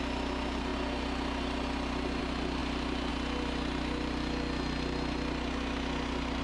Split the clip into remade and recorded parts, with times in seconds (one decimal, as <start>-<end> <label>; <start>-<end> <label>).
0.0-6.4 recorded